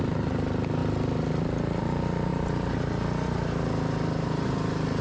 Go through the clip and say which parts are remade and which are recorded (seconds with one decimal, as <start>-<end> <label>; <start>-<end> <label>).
0.0-5.0 recorded